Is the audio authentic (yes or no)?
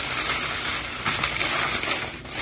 yes